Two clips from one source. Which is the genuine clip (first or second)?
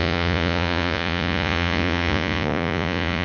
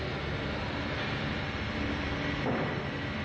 second